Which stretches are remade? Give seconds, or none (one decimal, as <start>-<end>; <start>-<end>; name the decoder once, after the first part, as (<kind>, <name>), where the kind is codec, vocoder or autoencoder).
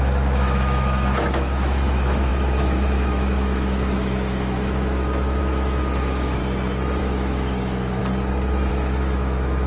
0.0-6.4 (autoencoder, DAC-VAE); 7.0-8.0; 8.7-9.7